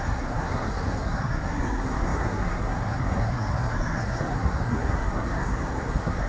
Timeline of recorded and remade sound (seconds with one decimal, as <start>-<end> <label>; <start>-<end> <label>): 0.0-6.3 remade

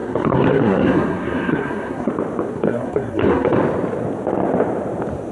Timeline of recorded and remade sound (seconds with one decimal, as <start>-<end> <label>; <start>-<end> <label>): 0.0-2.1 remade; 2.1-2.5 recorded; 2.5-3.6 remade; 3.6-5.3 recorded